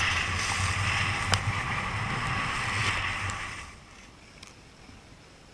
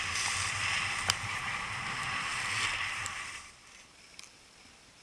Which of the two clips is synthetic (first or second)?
second